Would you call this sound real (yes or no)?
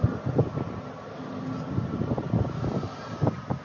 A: yes